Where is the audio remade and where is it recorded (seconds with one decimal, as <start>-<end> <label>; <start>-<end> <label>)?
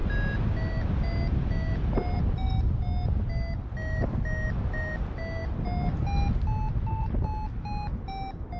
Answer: 0.0-8.6 recorded